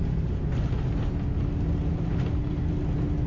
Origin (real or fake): real